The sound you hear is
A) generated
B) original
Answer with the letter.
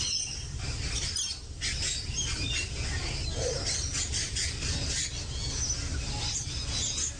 B